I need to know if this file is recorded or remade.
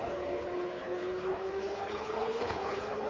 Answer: remade